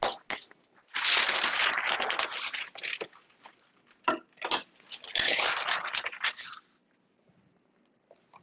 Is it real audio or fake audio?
real